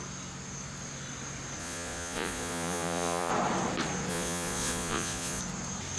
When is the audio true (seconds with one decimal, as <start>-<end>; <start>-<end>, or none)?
0.0-1.6; 3.3-4.1; 5.4-6.0